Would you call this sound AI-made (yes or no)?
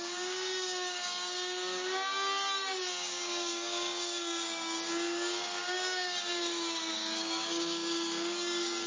yes